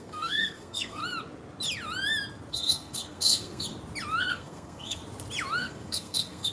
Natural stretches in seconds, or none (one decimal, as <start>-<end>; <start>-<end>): 1.0-2.5; 3.7-4.3; 5.0-5.6